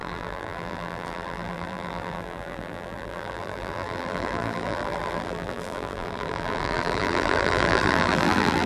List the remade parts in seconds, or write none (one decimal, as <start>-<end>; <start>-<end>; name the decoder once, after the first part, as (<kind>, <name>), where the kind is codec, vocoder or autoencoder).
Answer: 0.0-8.7 (vocoder, BigVGAN v2)